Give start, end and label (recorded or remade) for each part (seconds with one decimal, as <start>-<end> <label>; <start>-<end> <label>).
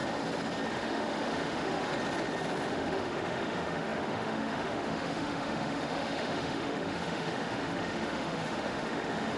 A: 0.0-0.7 recorded; 0.7-1.9 remade; 1.9-2.7 recorded; 2.7-9.4 remade